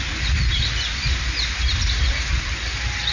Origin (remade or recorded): recorded